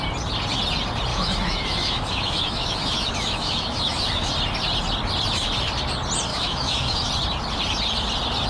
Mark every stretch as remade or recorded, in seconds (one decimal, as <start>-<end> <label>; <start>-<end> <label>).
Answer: 0.0-1.1 recorded; 1.1-4.3 remade; 4.3-6.3 recorded; 6.3-7.1 remade; 7.1-8.5 recorded